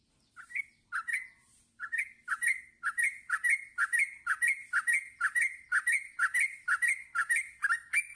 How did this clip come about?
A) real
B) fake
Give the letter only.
A